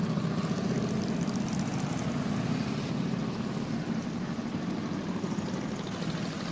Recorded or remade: recorded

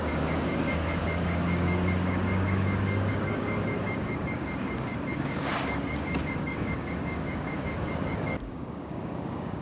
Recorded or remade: remade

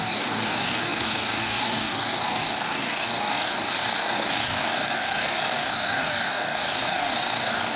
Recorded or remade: remade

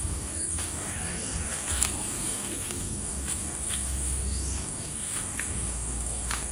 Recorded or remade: remade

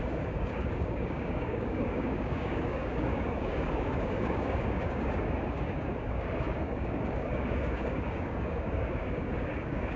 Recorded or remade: remade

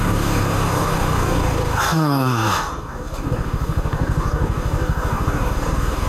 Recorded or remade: remade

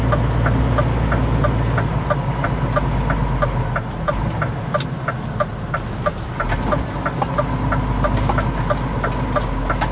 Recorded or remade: recorded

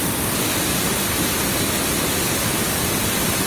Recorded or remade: recorded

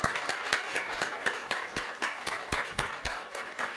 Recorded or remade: remade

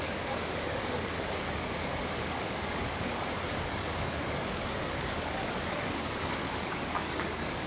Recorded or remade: remade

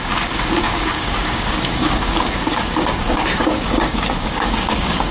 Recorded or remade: remade